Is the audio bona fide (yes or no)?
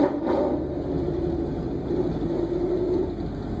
yes